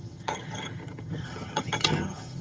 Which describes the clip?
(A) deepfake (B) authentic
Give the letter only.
A